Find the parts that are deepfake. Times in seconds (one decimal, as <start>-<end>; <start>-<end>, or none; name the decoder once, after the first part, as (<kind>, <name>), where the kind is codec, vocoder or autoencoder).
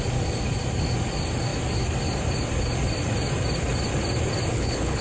4.5-5.0 (codec, HILCodec)